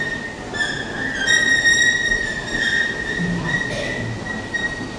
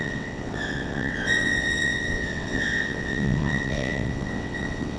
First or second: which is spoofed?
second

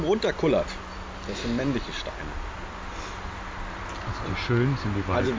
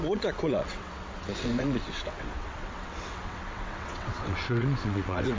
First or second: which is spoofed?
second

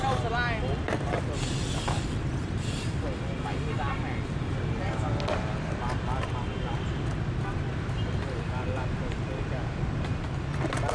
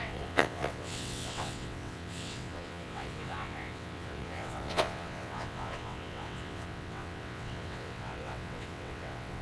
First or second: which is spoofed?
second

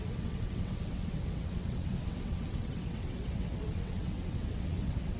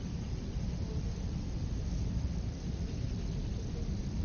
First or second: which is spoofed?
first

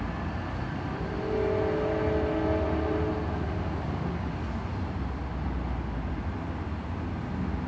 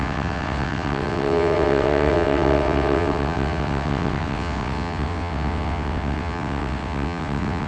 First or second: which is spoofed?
second